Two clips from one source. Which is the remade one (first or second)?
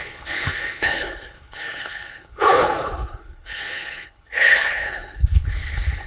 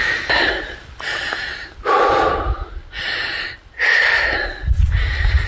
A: first